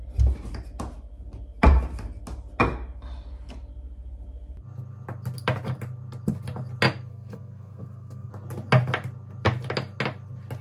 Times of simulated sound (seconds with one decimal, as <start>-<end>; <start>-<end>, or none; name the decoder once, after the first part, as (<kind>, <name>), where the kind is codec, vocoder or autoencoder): 7.1-8.3 (codec, SNAC)